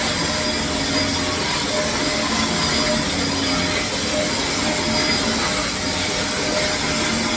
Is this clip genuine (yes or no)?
yes